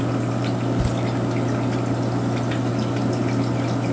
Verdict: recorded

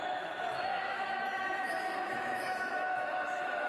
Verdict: remade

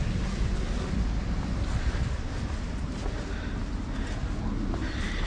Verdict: recorded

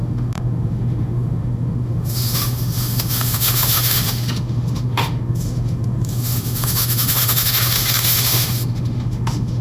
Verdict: remade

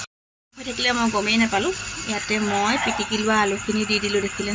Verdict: recorded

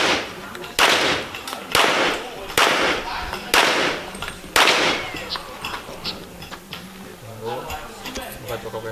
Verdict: recorded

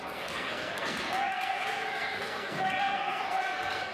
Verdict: remade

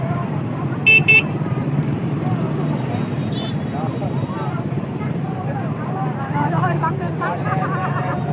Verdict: remade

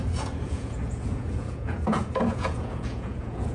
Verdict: remade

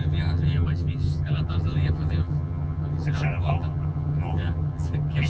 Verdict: remade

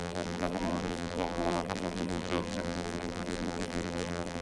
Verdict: remade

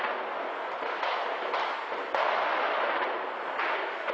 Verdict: recorded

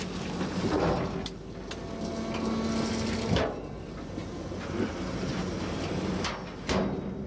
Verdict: recorded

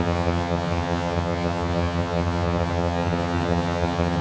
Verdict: remade